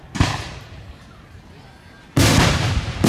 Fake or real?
real